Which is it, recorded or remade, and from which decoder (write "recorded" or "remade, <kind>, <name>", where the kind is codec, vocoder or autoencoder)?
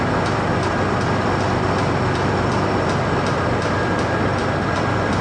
remade, vocoder, BigVGAN v2